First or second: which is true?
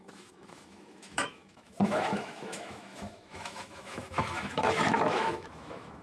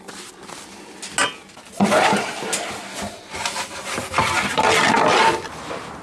second